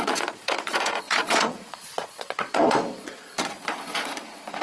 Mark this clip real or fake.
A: fake